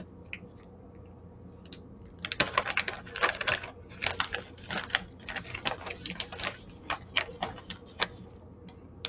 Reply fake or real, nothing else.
real